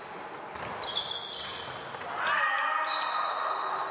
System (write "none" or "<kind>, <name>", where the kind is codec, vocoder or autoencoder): none